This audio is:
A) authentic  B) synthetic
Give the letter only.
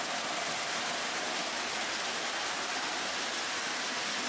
A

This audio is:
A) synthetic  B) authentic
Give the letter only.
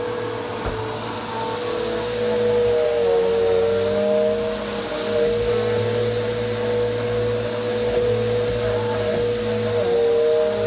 B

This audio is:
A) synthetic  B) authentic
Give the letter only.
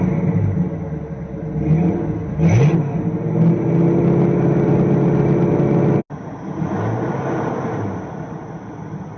B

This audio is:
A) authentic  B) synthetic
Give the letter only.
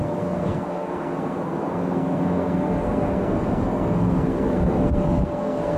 B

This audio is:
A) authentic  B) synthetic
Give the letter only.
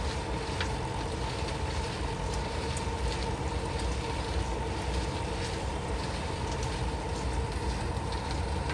A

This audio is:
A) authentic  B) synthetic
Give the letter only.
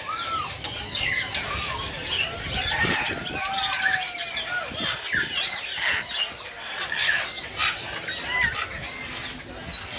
A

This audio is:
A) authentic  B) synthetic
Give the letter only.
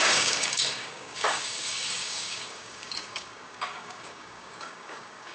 B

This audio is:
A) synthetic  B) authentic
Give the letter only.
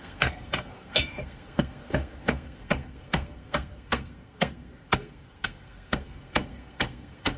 A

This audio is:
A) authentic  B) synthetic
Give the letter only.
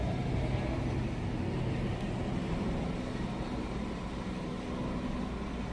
A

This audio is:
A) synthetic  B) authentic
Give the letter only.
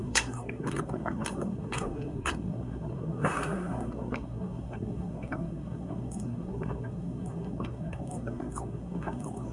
A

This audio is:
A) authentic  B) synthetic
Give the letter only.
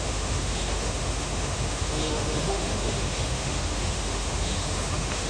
B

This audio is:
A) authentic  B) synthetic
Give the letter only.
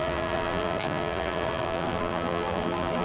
B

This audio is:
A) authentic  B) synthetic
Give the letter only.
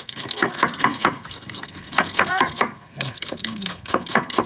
B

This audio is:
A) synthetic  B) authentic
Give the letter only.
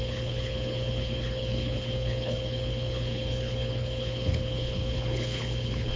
A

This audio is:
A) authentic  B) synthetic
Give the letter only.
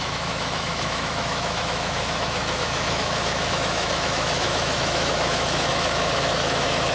B